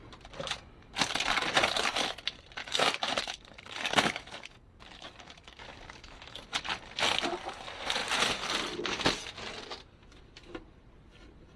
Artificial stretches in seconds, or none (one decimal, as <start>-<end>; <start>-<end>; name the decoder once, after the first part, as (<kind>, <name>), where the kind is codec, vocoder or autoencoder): 2.6-6.4 (codec, DAC)

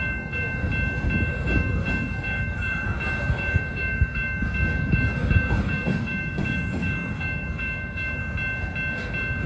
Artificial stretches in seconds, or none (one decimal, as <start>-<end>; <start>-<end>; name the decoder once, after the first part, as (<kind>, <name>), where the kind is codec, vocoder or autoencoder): 0.0-0.7 (codec, DAC); 1.3-8.2

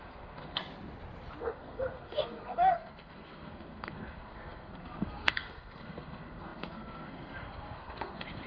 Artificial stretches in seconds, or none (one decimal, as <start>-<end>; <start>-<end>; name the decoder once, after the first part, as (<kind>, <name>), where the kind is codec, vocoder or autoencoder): 0.0-0.6 (codec, SNAC); 1.4-8.5

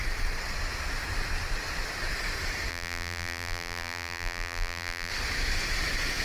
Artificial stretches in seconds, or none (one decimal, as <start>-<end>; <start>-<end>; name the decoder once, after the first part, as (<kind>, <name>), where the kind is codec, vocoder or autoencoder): 2.7-5.1 (vocoder, BigVGAN v2)

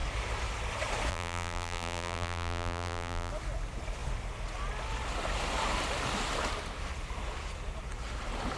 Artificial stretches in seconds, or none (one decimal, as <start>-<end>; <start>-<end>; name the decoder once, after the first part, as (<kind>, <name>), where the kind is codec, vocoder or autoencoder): 1.1-3.3 (vocoder, BigVGAN v2)